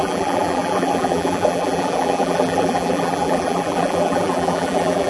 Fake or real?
fake